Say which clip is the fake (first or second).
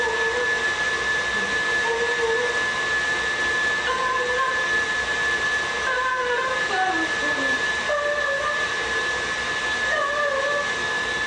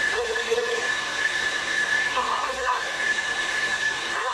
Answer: second